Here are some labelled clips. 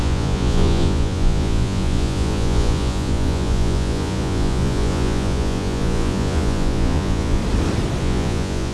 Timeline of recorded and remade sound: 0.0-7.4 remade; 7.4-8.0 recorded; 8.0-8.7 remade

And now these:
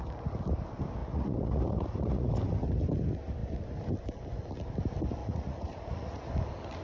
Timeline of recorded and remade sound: 0.0-1.0 recorded; 1.0-2.3 remade; 2.3-5.2 recorded; 5.2-6.3 remade; 6.3-6.8 recorded

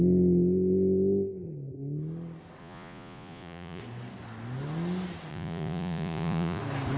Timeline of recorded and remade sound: 0.0-2.6 recorded; 2.6-3.8 remade; 3.8-5.3 recorded; 5.3-6.6 remade; 6.6-7.0 recorded

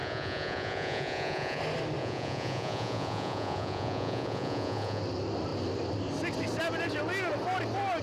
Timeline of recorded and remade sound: 0.0-1.6 remade; 1.6-2.0 recorded; 2.0-5.0 remade; 5.0-8.0 recorded

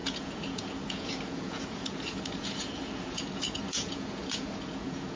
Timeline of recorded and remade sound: 0.0-5.2 remade